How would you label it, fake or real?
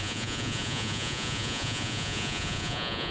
fake